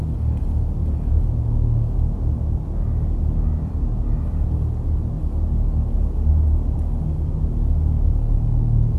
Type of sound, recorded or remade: recorded